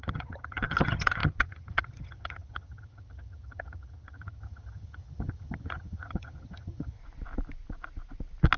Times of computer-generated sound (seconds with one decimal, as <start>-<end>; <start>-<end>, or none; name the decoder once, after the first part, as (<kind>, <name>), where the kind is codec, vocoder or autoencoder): 0.0-7.0 (vocoder, HiFi-GAN)